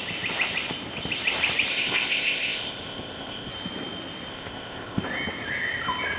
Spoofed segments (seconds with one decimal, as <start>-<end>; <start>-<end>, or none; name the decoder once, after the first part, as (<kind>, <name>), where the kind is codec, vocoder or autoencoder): 1.7-3.5 (codec, ZipCodec); 4.3-5.0